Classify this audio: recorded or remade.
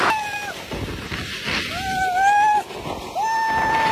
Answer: recorded